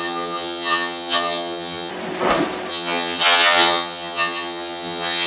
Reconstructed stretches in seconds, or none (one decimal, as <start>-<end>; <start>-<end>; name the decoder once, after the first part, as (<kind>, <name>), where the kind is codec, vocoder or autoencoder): 0.0-1.9 (vocoder, HiFi-GAN); 2.7-5.3